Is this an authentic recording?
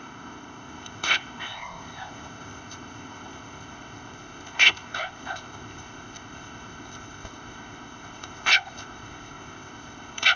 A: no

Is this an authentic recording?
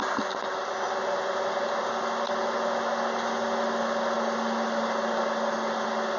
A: yes